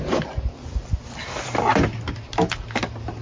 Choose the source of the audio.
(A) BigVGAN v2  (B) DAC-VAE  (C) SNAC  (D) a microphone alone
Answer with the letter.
D